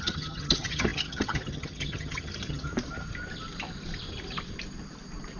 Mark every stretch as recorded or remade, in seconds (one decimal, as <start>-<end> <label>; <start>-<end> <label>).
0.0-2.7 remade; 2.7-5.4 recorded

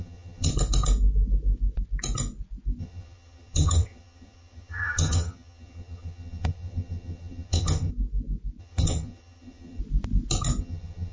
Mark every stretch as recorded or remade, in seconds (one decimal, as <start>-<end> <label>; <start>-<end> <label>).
0.0-0.5 remade; 0.5-2.8 recorded; 2.8-7.9 remade; 7.9-8.6 recorded; 8.6-9.8 remade; 9.8-10.6 recorded; 10.6-11.1 remade

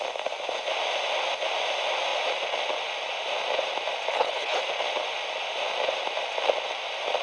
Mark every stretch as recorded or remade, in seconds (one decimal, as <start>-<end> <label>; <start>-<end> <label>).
0.0-4.1 recorded; 4.1-4.6 remade; 4.6-7.2 recorded

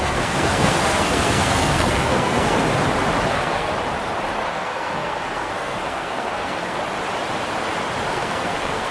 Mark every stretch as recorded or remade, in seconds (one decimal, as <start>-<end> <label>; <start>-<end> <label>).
0.0-2.7 remade; 2.7-3.3 recorded; 3.3-3.7 remade; 3.7-4.5 recorded; 4.5-6.8 remade; 6.8-8.1 recorded; 8.1-8.9 remade

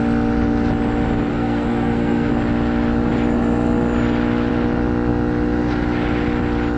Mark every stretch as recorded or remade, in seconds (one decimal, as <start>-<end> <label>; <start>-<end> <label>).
0.0-1.3 recorded; 1.3-2.3 remade; 2.3-6.8 recorded